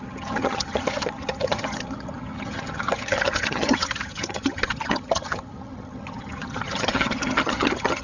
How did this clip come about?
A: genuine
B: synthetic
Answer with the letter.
B